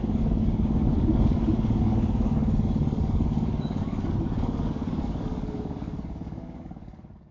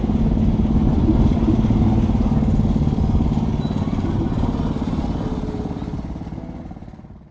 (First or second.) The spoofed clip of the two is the first